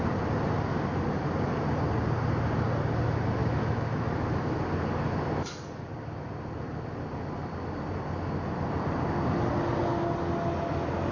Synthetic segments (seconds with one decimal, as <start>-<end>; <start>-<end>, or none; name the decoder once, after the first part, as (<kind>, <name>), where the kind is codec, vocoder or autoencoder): 3.4-4.6 (autoencoder, DAC-VAE)